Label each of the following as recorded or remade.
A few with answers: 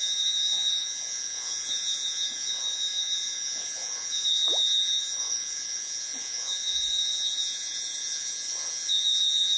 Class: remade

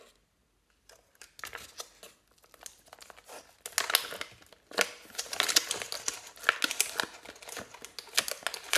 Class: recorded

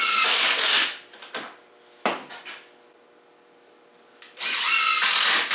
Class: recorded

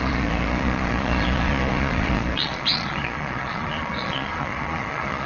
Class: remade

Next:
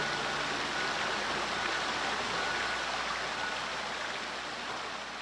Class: recorded